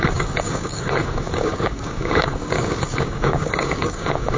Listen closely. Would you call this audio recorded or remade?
remade